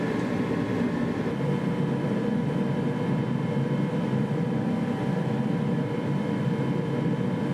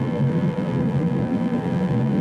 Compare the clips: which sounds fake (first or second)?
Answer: second